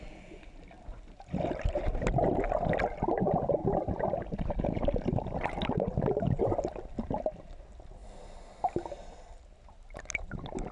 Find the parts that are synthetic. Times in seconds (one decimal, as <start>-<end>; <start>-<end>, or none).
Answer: 3.6-6.4